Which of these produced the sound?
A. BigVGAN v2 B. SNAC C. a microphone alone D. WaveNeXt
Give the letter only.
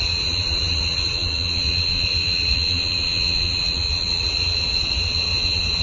D